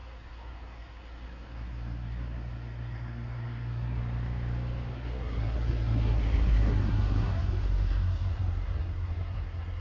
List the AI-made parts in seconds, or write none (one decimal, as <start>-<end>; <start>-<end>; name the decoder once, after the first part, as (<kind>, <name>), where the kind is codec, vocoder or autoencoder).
0.0-4.0 (codec, SNAC); 4.9-9.8